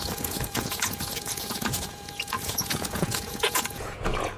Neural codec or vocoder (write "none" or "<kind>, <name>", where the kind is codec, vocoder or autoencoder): vocoder, Vocos